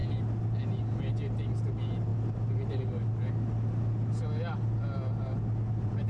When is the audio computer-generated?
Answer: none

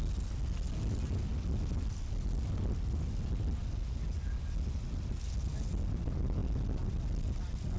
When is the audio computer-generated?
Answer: none

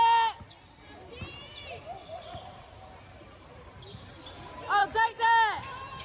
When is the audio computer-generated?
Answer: 2.0-2.7 (vocoder, Vocos)

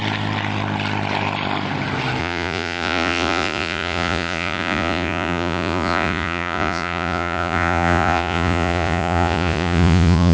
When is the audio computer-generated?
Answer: 2.2-10.3 (vocoder, Vocos)

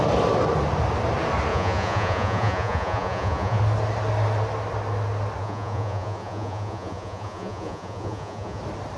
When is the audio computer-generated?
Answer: 1.5-3.6 (vocoder, Vocos); 5.4-8.6

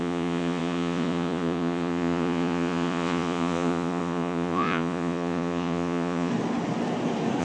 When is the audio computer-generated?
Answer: 0.0-6.3 (vocoder, Vocos)

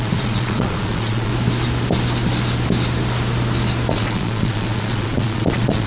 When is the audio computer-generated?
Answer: 0.0-1.3 (vocoder, Vocos); 3.9-5.9